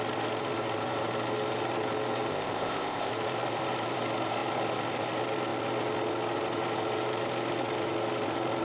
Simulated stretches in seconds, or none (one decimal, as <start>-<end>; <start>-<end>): 2.3-3.1